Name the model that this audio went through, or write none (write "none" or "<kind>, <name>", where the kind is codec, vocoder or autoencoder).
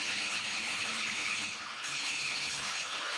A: codec, HILCodec